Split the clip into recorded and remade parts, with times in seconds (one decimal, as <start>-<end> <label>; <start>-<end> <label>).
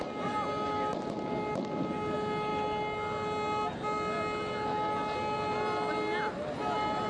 0.0-7.1 recorded